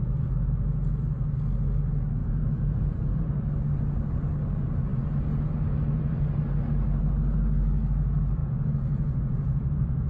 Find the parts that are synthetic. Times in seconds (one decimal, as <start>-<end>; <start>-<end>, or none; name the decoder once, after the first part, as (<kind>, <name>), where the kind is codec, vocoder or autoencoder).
2.2-3.3 (vocoder, Vocos); 8.4-10.1